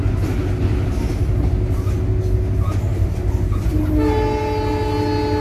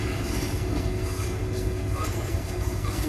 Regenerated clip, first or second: second